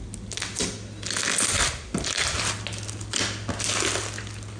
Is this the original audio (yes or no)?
yes